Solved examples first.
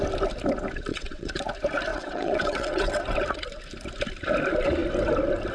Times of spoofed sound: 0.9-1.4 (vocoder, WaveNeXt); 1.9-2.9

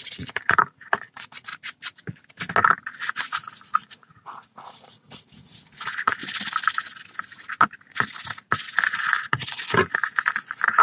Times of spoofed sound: 0.0-1.5 (vocoder, Vocos); 3.1-6.2; 8.9-10.8

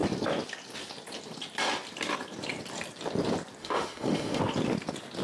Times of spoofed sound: 3.6-4.4 (autoencoder, DAC-VAE)

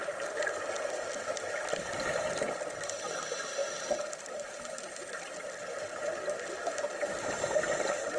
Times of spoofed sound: none

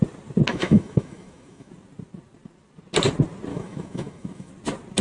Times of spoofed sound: 0.5-1.7 (autoencoder, DAC-VAE); 3.5-4.5

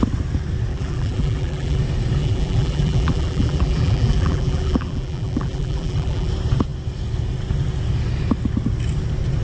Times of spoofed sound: 0.7-1.8 (vocoder, BigVGAN v2); 2.2-6.3

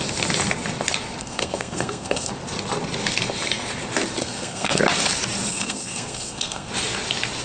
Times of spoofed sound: 1.2-2.3 (codec, SNAC); 4.2-4.8; 5.5-6.7

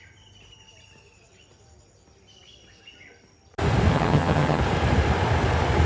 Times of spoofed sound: 3.9-4.6 (vocoder, HiFi-GAN)